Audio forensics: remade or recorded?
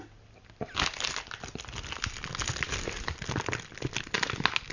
recorded